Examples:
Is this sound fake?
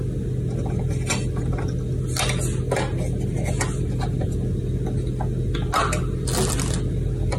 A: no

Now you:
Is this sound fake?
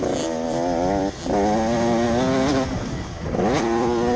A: no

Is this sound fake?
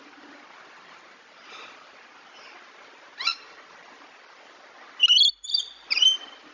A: no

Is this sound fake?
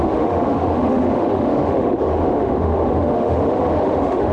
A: yes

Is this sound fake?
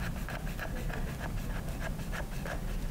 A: no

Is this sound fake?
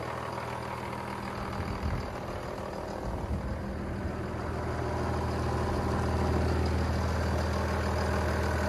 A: no